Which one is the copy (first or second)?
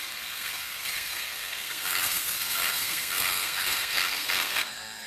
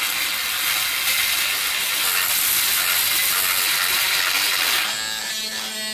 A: first